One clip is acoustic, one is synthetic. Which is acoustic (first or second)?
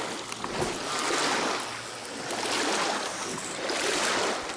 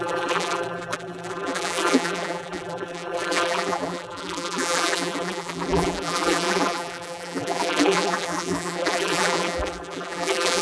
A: first